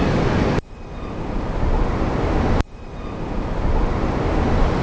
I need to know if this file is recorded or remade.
recorded